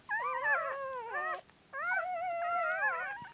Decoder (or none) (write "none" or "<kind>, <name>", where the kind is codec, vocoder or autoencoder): none